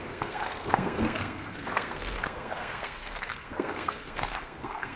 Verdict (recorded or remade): remade